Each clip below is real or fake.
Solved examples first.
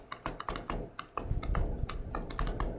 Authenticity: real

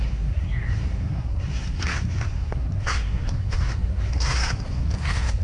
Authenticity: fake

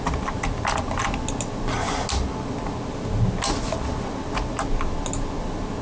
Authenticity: real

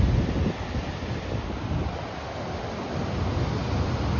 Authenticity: real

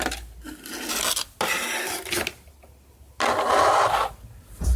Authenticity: real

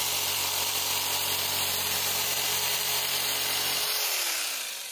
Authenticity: real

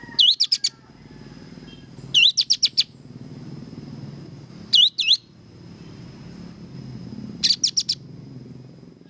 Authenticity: real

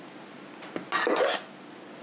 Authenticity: real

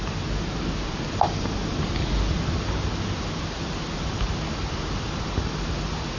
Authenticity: real